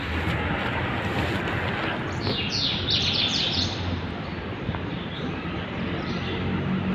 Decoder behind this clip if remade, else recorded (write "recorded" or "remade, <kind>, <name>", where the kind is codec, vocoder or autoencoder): recorded